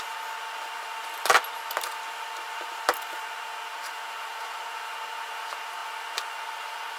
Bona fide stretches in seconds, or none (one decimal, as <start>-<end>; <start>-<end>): 0.0-7.0

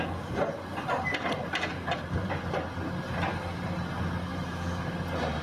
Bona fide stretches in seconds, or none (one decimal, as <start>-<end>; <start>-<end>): 0.0-4.3; 4.9-5.4